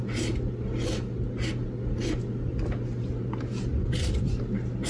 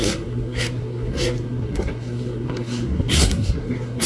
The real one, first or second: first